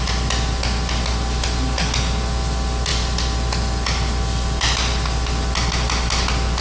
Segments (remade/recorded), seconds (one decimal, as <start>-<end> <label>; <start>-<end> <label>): 0.0-6.6 recorded